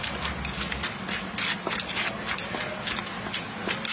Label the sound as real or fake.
real